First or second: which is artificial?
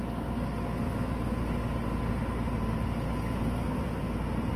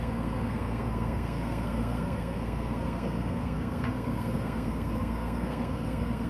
second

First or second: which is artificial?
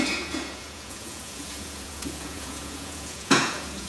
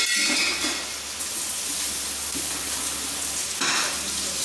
first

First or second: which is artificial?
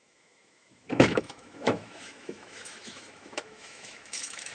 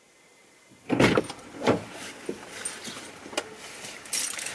first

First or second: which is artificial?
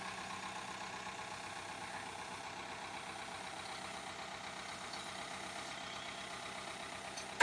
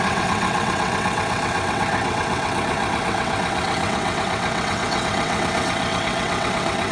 second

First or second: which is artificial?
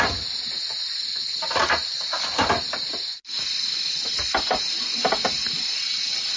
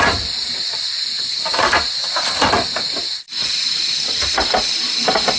second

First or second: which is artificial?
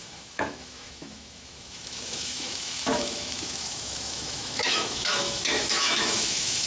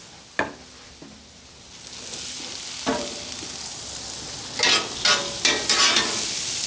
first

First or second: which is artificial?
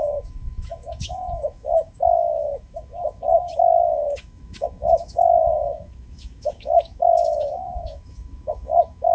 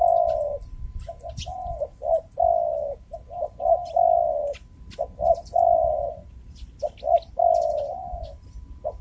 first